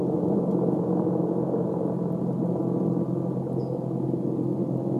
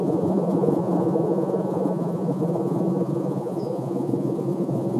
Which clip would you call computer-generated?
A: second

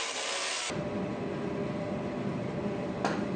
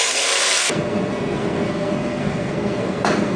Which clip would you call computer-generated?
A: second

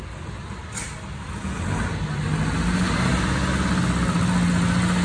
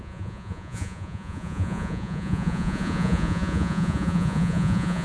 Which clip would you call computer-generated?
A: second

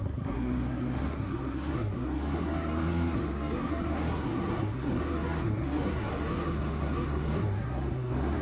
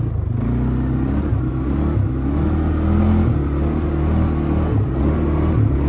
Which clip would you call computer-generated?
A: first